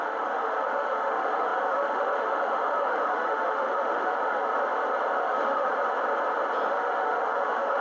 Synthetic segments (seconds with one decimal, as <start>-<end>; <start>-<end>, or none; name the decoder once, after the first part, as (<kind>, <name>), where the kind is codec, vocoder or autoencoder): 0.0-4.5 (autoencoder, DAC-VAE); 5.1-5.7; 6.7-7.8